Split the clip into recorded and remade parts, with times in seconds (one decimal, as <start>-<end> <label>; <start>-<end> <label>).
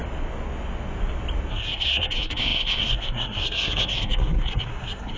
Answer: 0.0-1.5 recorded; 1.5-5.2 remade